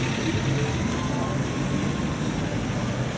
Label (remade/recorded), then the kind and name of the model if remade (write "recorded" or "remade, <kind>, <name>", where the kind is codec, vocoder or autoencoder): recorded